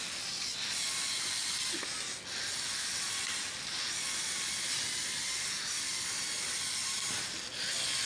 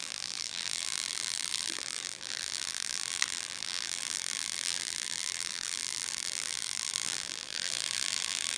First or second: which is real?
first